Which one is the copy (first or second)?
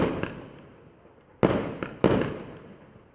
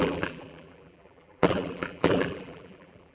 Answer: second